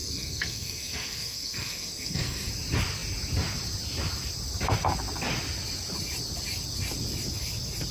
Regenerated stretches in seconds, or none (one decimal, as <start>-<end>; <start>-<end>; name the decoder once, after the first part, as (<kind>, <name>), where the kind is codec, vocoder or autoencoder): 0.0-2.5 (codec, SNAC)

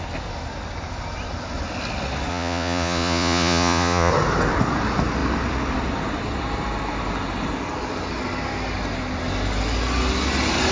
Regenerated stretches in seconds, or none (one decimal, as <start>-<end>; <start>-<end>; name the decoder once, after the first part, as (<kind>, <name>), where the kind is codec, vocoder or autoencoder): 2.3-4.1 (vocoder, Vocos)

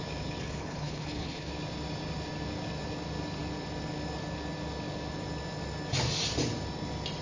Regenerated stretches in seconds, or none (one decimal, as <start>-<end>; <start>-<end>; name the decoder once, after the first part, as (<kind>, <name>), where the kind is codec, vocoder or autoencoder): 0.4-1.5 (codec, HILCodec)

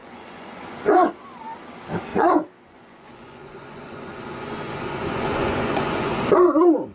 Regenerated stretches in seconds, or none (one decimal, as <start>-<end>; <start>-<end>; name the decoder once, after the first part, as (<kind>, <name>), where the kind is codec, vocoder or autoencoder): 0.0-1.1 (vocoder, Vocos); 2.1-6.2

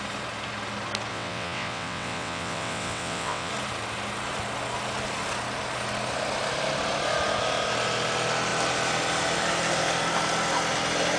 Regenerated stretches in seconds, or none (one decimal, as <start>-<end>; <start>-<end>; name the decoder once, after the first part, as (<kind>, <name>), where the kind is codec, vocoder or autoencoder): 1.1-3.5 (vocoder, WaveNeXt)